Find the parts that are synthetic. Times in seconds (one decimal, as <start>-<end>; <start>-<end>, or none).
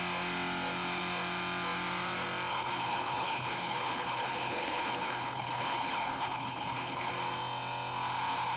2.5-7.1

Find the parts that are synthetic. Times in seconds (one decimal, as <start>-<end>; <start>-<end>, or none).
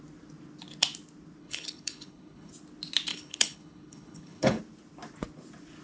1.4-2.5; 3.1-4.6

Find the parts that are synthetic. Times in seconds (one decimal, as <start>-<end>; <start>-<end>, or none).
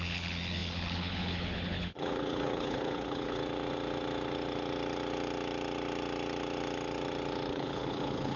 0.0-3.4; 7.5-8.4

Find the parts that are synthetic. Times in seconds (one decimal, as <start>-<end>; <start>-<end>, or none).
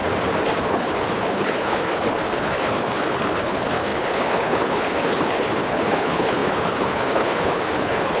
0.6-8.2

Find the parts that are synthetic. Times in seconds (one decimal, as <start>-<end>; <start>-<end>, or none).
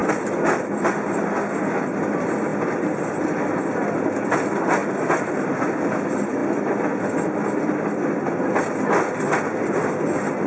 none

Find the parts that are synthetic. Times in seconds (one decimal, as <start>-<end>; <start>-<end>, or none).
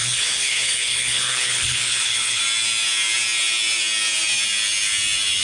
0.0-2.4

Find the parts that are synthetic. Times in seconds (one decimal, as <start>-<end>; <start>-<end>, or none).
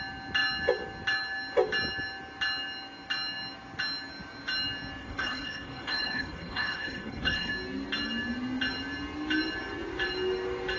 5.0-7.5